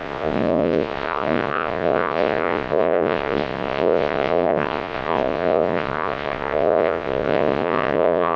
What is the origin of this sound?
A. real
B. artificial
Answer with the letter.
B